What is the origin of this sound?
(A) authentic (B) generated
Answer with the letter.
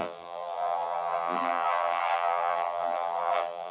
B